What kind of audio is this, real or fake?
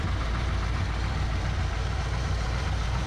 real